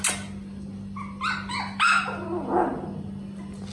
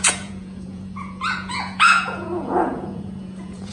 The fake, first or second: second